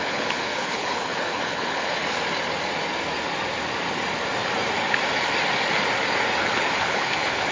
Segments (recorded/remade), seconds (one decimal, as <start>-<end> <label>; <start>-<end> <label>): 0.0-2.0 remade; 2.0-6.4 recorded; 6.4-7.5 remade